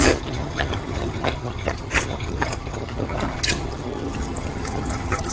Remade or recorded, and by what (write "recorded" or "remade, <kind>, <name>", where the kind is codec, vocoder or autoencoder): remade, vocoder, HiFi-GAN